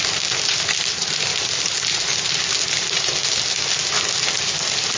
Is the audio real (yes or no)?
yes